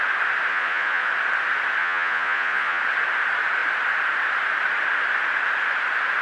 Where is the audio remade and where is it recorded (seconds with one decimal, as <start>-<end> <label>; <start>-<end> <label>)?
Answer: 0.0-0.5 recorded; 0.5-1.1 remade; 1.1-1.8 recorded; 1.8-2.8 remade; 2.8-6.2 recorded